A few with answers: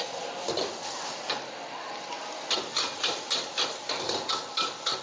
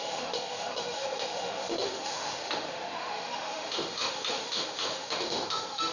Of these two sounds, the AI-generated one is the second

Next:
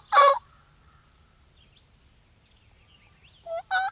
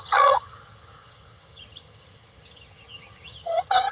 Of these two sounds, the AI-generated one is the second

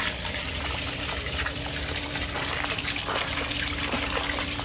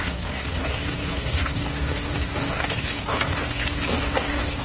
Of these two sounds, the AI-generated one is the second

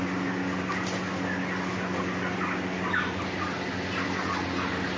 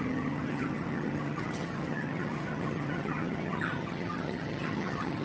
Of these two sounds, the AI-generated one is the second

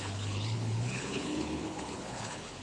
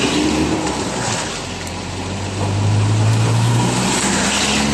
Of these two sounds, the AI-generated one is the first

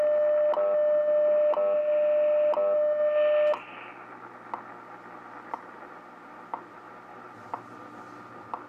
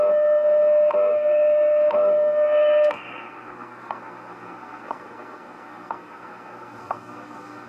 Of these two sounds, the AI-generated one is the second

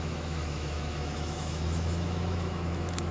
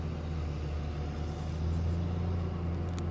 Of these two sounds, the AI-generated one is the first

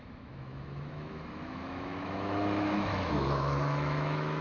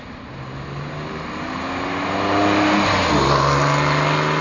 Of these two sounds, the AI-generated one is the first